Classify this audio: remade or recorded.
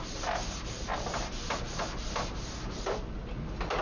recorded